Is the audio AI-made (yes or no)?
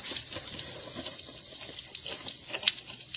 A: no